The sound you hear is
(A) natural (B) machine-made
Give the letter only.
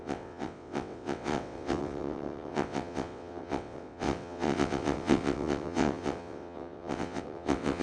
B